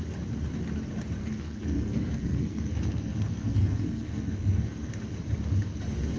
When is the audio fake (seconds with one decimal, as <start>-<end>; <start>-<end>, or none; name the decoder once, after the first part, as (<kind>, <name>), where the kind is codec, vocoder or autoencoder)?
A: 1.2-4.9 (codec, SNAC)